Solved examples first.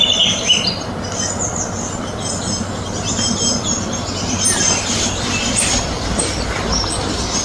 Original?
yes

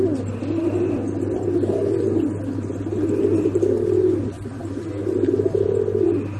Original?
yes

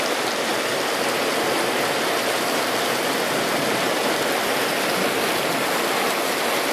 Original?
yes